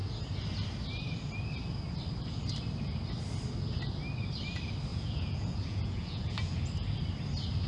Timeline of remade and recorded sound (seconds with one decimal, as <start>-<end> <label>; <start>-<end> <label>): 0.0-4.9 recorded; 4.9-6.5 remade; 6.5-7.7 recorded